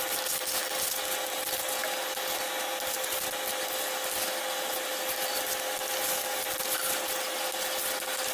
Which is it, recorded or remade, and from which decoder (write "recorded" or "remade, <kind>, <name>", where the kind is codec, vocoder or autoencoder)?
recorded